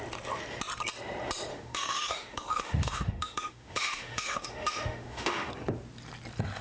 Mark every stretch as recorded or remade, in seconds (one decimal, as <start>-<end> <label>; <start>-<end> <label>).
0.0-1.5 recorded; 1.5-5.5 remade; 5.5-6.6 recorded